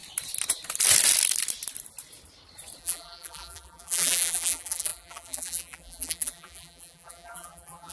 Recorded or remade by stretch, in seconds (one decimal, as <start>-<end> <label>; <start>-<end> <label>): 0.0-2.8 recorded; 2.8-7.9 remade